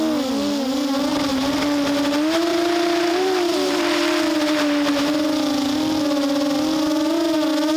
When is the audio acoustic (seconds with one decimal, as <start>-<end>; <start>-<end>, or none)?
0.0-1.1; 1.6-2.5; 4.9-7.8